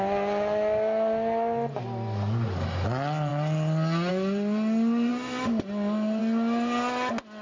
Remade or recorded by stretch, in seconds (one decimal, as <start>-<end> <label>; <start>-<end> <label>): 0.0-7.4 recorded